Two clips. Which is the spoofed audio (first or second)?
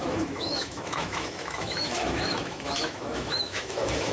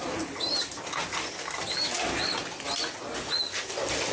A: first